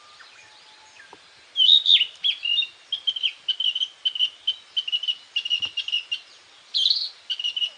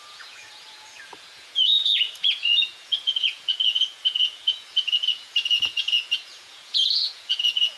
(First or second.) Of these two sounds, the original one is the first